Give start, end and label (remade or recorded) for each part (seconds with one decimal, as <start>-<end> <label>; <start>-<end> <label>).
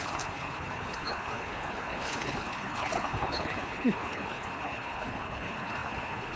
0.0-6.4 remade